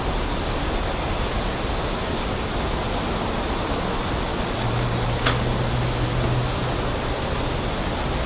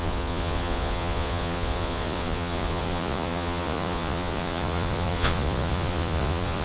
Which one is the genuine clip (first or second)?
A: first